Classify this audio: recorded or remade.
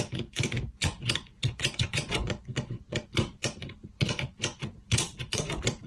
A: remade